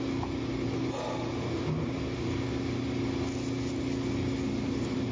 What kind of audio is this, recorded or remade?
recorded